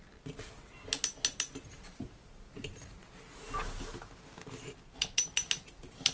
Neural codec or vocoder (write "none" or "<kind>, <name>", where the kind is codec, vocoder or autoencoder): none